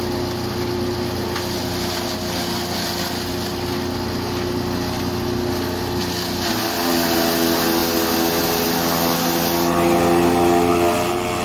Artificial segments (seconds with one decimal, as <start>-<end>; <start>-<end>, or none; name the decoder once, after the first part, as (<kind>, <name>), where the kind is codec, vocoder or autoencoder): none